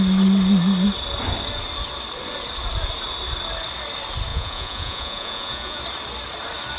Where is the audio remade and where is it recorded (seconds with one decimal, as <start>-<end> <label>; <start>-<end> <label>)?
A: 0.0-4.3 recorded; 4.3-5.8 remade; 5.8-6.8 recorded